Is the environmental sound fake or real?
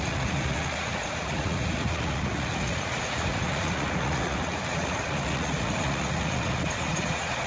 fake